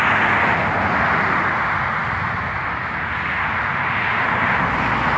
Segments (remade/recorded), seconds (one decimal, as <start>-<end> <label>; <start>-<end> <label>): 0.0-5.2 recorded